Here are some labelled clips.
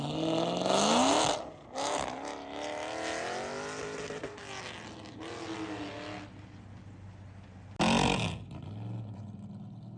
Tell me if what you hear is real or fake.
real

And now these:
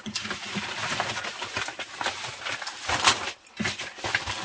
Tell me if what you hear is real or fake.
real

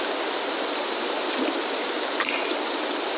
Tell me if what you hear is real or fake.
real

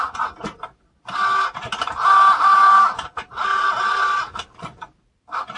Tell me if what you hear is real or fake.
real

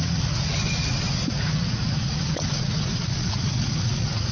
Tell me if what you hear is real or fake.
fake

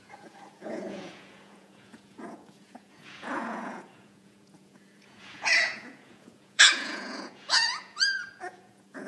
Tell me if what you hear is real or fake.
fake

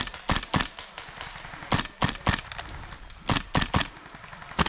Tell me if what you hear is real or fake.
real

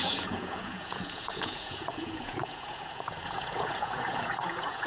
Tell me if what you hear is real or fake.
fake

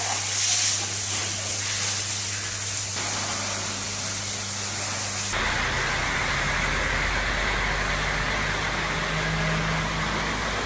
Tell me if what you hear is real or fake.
real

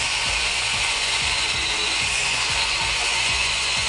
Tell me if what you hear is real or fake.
fake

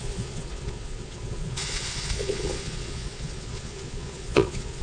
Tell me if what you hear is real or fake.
fake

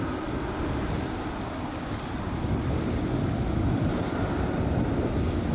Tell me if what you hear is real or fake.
real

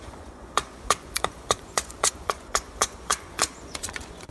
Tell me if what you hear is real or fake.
fake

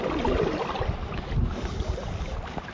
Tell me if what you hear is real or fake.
real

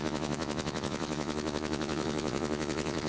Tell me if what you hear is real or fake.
fake